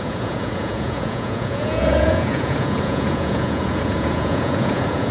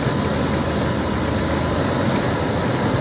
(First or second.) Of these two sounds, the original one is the second